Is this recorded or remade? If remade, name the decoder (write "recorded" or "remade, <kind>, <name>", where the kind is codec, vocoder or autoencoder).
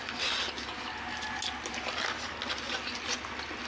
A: recorded